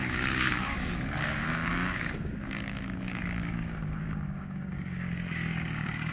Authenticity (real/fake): fake